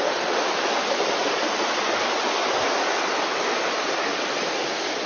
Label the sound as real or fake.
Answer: real